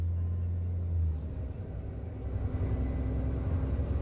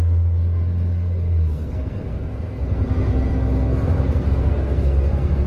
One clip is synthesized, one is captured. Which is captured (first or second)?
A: first